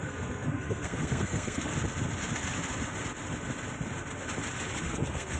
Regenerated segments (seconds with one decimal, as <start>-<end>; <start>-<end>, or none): 0.0-1.7; 4.8-5.4